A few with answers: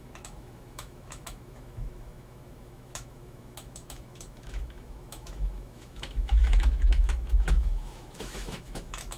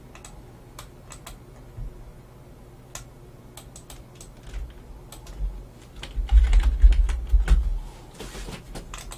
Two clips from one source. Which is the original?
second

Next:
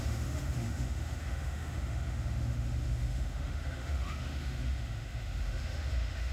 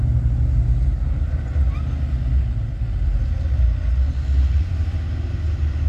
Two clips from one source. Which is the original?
second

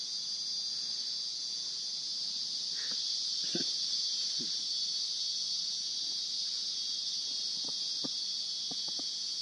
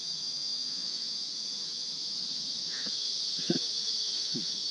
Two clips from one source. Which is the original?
first